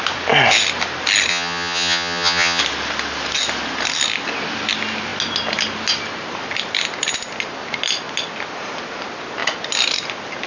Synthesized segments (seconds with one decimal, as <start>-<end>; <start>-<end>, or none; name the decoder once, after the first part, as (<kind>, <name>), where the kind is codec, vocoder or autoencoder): 1.3-2.6 (vocoder, HiFi-GAN)